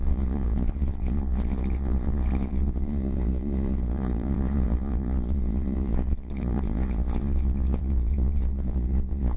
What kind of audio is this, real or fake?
fake